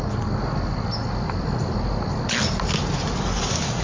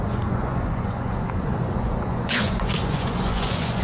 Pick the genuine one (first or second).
first